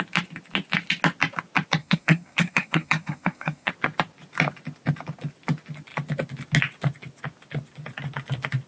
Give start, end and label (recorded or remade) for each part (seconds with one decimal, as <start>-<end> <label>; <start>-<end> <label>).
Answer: 0.0-1.8 recorded; 1.8-3.7 remade; 3.7-8.7 recorded